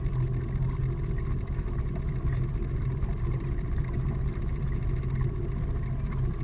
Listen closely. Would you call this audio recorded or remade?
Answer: recorded